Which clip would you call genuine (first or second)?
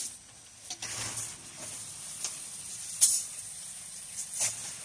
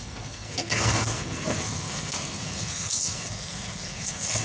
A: first